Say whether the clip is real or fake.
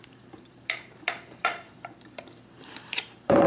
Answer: fake